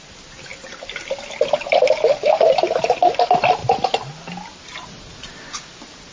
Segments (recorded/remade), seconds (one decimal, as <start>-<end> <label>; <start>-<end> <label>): 0.0-0.5 recorded; 0.5-1.5 remade; 1.5-6.1 recorded